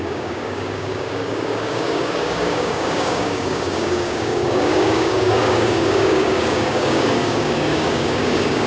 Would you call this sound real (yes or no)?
no